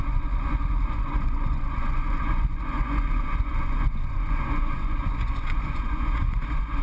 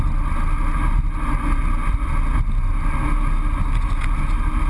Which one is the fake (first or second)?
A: first